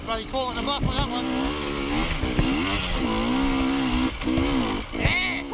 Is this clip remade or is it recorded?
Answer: recorded